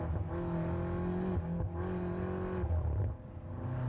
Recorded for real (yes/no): yes